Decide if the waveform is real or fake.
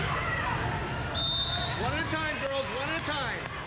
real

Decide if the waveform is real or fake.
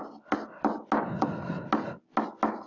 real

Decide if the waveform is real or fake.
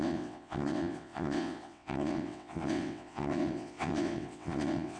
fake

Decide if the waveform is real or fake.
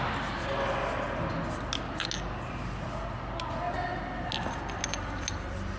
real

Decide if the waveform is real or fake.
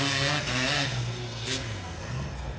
fake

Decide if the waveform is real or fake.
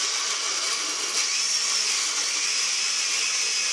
real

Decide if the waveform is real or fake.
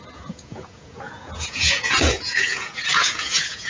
fake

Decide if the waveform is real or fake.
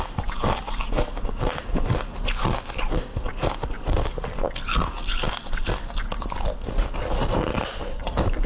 real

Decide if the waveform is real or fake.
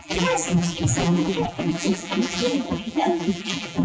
fake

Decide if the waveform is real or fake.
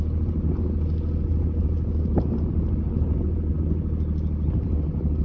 real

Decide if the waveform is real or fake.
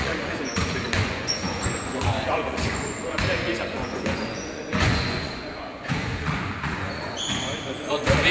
fake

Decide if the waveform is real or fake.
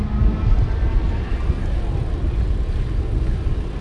real